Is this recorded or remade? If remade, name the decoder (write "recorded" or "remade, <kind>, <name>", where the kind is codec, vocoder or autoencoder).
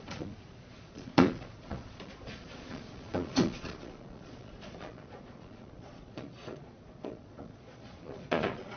remade, vocoder, Vocos